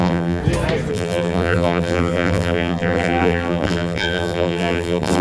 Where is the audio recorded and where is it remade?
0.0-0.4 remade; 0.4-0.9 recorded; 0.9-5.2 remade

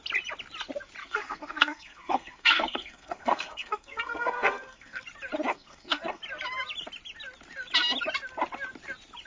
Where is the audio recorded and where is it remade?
0.0-1.0 recorded; 1.0-5.0 remade; 5.0-5.5 recorded; 5.5-6.2 remade; 6.2-9.3 recorded

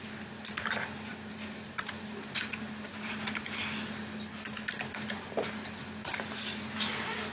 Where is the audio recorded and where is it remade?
0.0-7.3 recorded